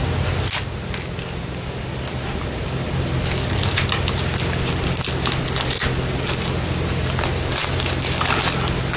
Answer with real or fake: real